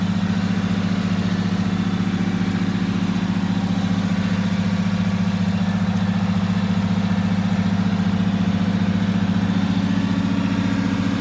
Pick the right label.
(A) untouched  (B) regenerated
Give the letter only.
A